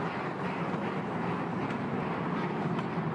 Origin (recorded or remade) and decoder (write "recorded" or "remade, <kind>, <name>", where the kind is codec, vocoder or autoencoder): recorded